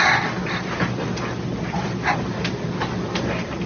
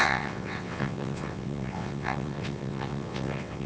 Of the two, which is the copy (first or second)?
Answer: second